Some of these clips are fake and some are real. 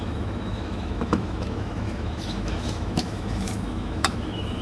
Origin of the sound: fake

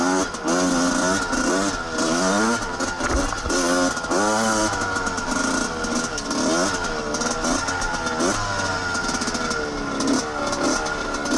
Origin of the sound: real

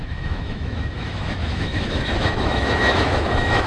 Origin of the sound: fake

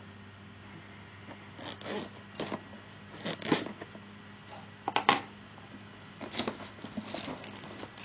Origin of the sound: real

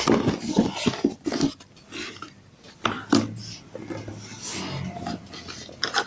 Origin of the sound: real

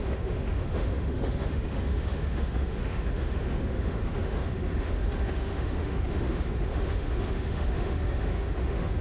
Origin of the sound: fake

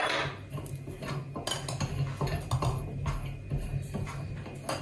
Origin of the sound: real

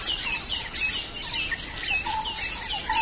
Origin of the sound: real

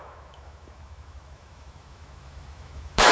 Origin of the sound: fake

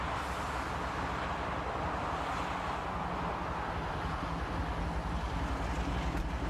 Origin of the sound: real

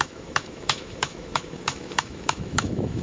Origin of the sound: fake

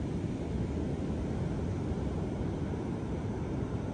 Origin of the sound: real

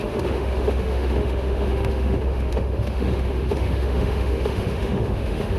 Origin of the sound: fake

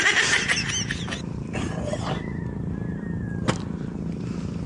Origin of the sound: real